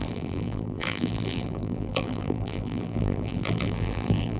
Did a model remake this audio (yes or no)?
yes